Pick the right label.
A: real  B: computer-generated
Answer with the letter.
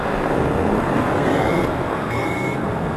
B